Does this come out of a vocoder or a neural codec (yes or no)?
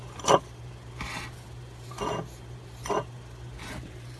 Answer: no